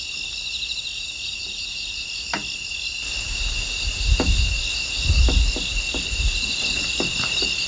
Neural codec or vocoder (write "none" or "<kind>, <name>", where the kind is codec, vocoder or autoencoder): none